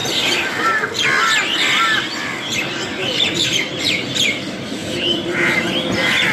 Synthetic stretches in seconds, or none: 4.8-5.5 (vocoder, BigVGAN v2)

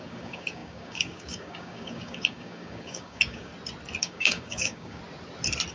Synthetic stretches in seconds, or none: 0.0-3.5 (codec, DAC); 4.0-5.0

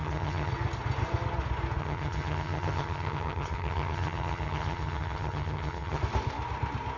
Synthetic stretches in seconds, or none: 0.0-0.5 (vocoder, HiFi-GAN); 1.8-6.0

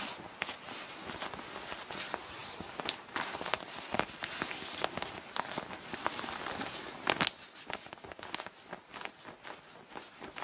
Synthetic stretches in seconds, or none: none